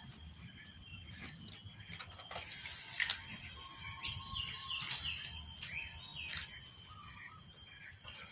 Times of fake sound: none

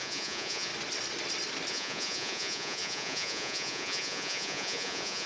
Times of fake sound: 0.0-0.7 (vocoder, Vocos); 1.7-5.3